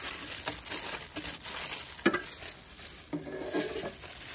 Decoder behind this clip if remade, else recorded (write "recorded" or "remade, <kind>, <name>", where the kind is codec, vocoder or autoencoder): recorded